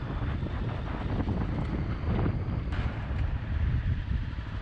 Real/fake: real